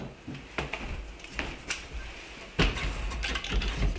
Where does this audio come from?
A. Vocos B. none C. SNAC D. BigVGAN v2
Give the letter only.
B